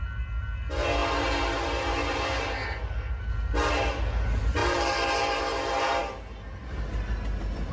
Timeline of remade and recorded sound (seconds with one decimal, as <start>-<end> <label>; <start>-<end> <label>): 0.0-4.6 recorded; 4.6-5.4 remade; 5.4-7.7 recorded